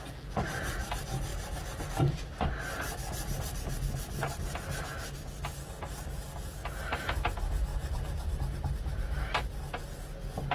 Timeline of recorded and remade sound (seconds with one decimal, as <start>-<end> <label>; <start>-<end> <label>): 0.0-1.3 recorded; 1.3-1.9 remade; 1.9-7.7 recorded; 7.7-9.4 remade; 9.4-10.5 recorded